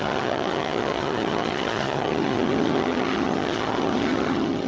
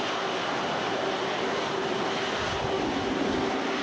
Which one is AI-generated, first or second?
first